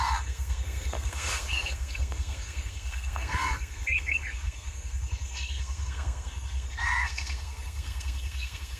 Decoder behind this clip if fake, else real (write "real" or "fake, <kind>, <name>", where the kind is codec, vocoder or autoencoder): fake, codec, SNAC